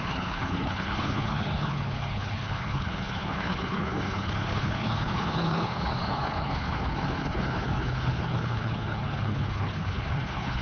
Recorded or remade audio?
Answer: remade